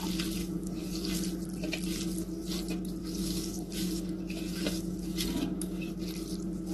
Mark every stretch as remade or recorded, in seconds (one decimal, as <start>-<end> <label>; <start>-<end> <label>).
0.0-0.4 recorded; 0.4-1.1 remade; 1.1-3.0 recorded; 3.0-5.9 remade; 5.9-6.7 recorded